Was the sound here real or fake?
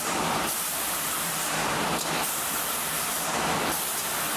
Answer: fake